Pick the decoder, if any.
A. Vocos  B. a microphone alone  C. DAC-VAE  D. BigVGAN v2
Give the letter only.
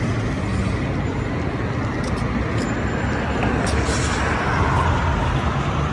B